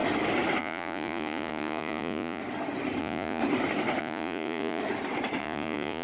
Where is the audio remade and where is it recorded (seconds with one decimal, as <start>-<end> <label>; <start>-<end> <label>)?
0.0-0.6 recorded; 0.6-2.4 remade; 2.4-3.0 recorded; 3.0-3.4 remade; 3.4-4.0 recorded; 4.0-4.8 remade; 4.8-5.4 recorded; 5.4-6.0 remade